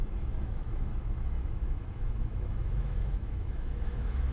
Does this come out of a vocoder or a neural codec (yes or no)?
yes